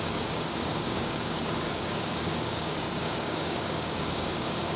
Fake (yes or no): yes